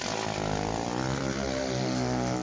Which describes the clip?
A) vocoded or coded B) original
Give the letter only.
B